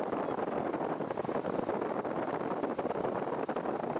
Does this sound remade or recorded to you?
recorded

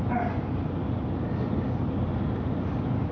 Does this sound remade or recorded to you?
recorded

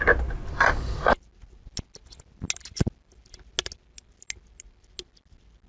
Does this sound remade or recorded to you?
recorded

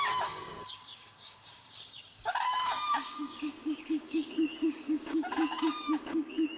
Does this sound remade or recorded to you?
remade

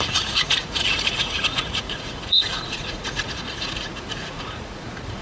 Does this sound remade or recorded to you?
remade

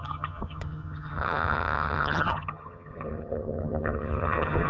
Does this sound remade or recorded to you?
remade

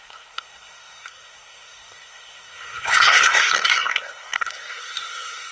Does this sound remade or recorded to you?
remade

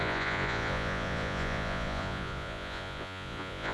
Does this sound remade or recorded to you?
remade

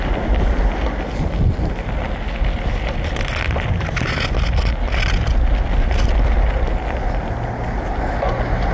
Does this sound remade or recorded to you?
recorded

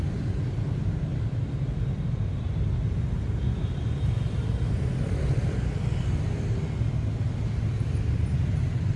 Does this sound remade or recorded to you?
recorded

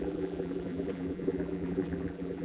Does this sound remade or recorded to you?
remade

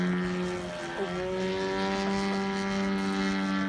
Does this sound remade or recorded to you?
recorded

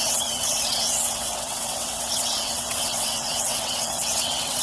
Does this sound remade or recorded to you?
remade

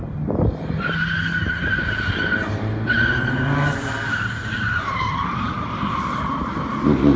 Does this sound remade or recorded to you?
recorded